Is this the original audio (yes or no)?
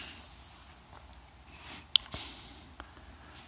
yes